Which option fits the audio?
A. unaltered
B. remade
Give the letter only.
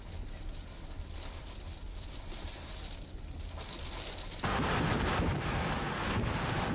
A